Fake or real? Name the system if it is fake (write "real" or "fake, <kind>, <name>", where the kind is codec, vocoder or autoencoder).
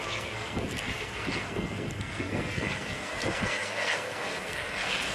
fake, codec, SNAC